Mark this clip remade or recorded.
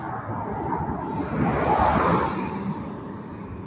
recorded